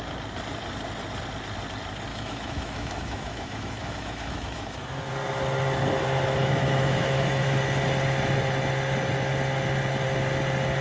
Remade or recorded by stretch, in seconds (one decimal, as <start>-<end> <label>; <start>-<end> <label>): 0.0-2.1 recorded; 2.1-5.1 remade; 5.1-6.4 recorded; 6.4-7.6 remade; 7.6-10.8 recorded